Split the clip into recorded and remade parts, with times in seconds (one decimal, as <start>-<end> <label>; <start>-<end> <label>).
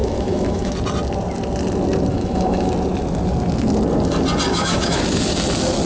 0.0-0.7 remade; 0.7-2.1 recorded; 2.1-2.7 remade; 2.7-4.5 recorded; 4.5-5.0 remade; 5.0-5.9 recorded